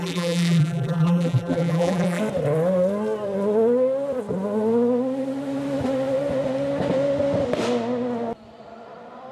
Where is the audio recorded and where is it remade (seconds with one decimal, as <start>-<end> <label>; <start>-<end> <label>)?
0.0-2.2 remade; 2.2-9.3 recorded